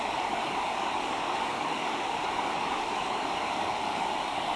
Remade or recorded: remade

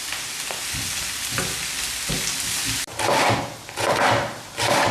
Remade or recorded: recorded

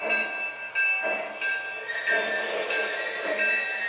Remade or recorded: recorded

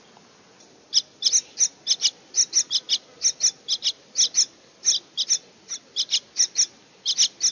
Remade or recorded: recorded